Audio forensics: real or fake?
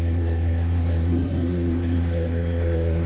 fake